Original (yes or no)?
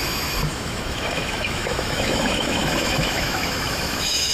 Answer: no